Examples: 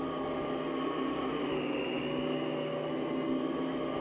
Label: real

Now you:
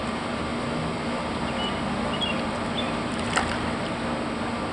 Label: real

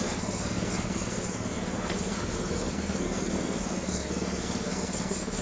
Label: fake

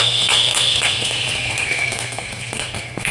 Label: fake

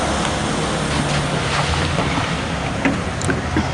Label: real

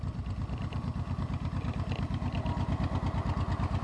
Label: real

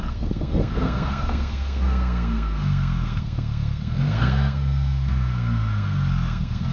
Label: fake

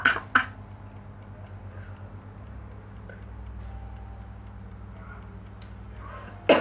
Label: real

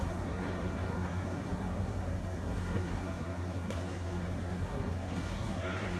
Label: fake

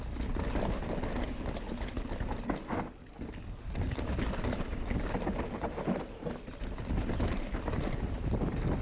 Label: real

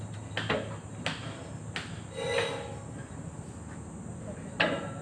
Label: real